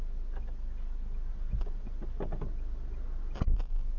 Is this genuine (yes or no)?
yes